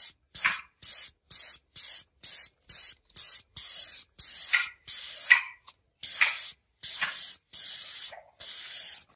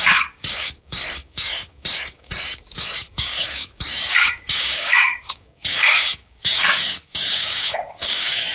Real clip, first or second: first